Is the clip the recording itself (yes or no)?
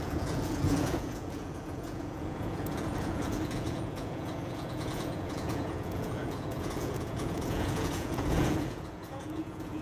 no